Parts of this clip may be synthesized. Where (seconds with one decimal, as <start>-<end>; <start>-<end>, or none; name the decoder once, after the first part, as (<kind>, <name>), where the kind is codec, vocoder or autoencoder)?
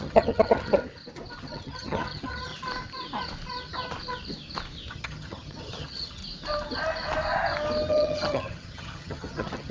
0.0-0.8 (vocoder, HiFi-GAN); 1.4-2.5; 4.9-6.2; 7.9-9.7